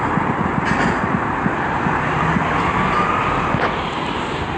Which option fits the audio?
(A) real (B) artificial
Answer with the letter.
A